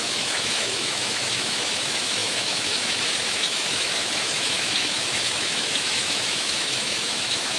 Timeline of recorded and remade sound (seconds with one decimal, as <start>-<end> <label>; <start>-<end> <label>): 0.0-7.6 remade